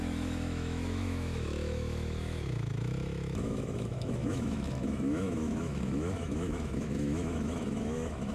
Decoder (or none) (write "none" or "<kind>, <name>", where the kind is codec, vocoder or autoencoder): autoencoder, DAC-VAE